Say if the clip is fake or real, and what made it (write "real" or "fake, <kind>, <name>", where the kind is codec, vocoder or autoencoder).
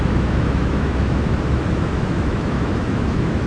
fake, autoencoder, DAC-VAE